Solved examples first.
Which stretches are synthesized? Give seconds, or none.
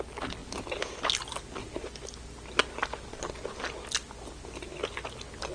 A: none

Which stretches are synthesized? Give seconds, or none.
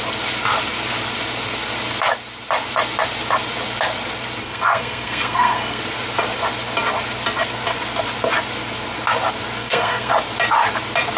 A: 4.4-5.8 (codec, SNAC); 9.6-10.1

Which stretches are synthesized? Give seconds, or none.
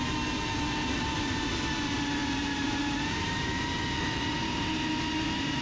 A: 0.5-1.4 (vocoder, BigVGAN v2); 2.2-3.8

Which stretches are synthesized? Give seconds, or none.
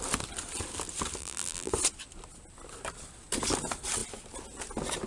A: 1.2-1.7 (vocoder, BigVGAN v2)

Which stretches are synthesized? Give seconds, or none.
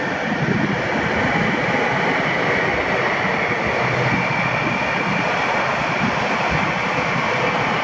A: none